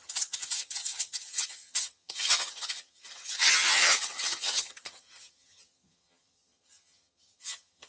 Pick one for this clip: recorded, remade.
remade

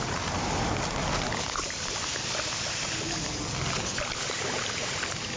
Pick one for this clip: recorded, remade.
recorded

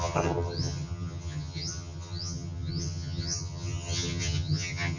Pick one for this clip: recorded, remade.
remade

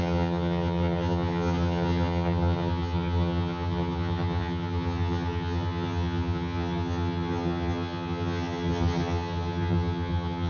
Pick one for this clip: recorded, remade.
remade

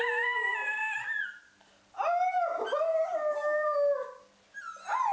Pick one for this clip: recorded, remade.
recorded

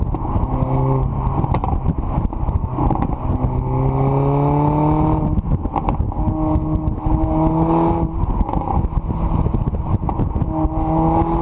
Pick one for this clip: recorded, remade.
recorded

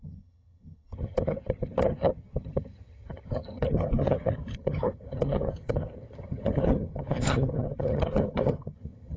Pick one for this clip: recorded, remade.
remade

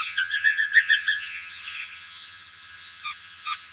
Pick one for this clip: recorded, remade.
remade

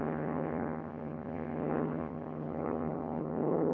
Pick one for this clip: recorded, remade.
remade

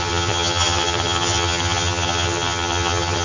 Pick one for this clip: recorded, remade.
remade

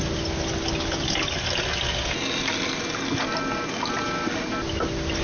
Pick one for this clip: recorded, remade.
recorded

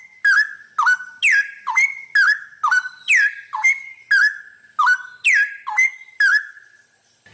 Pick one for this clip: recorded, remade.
recorded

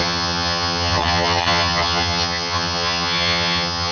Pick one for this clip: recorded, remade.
remade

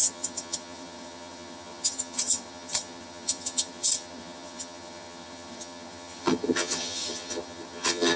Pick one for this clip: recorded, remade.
remade